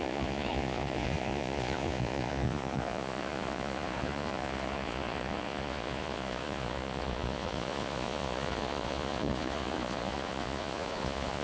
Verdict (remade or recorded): remade